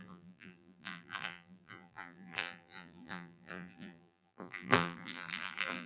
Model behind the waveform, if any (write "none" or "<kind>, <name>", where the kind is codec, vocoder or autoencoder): vocoder, BigVGAN v2